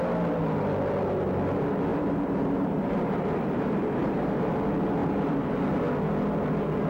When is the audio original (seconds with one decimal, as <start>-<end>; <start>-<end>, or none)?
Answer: 0.0-1.9; 4.5-5.0; 5.6-6.9